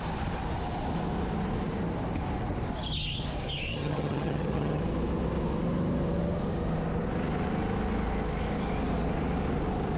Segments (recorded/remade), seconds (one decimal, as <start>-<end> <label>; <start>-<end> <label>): 0.0-3.7 recorded; 3.7-4.8 remade; 4.8-10.0 recorded

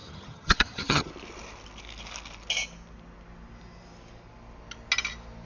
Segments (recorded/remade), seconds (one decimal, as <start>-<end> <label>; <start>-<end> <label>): 0.0-1.1 remade; 1.1-5.5 recorded

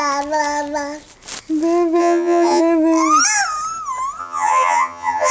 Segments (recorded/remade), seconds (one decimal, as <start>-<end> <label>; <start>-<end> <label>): 0.0-2.0 recorded; 2.0-2.6 remade; 2.6-4.2 recorded; 4.2-5.3 remade